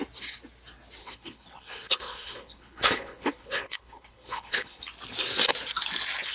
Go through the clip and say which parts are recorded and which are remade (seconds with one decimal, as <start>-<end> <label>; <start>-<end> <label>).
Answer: 0.0-1.0 recorded; 1.0-4.8 remade; 4.8-6.3 recorded